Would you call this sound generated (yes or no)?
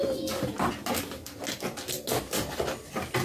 no